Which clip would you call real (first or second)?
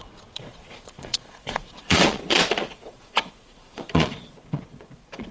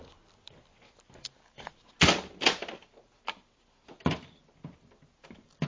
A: second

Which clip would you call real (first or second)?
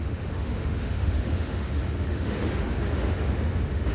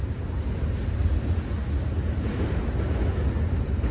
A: second